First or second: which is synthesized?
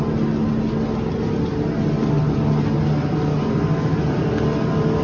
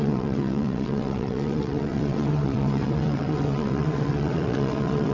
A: second